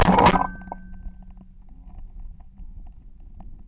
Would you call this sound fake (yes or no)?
no